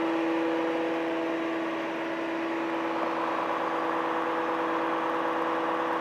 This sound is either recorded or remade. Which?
recorded